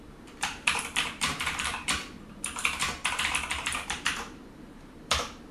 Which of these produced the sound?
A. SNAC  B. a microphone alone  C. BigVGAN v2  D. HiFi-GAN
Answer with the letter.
C